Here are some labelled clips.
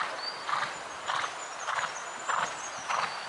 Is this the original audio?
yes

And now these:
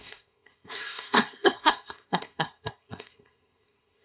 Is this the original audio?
no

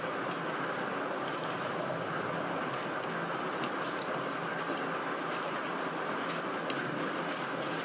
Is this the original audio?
yes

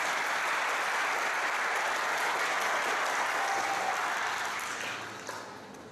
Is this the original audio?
yes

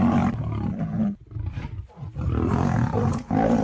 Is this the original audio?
yes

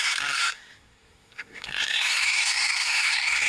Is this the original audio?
no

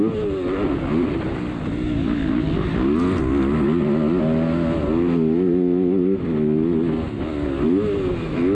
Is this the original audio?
yes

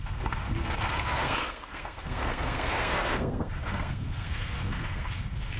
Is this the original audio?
no